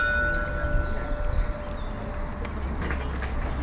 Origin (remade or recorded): recorded